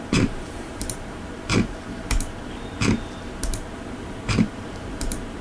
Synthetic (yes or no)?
yes